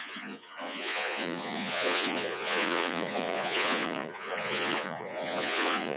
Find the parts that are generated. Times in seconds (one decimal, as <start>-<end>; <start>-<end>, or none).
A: 0.0-6.0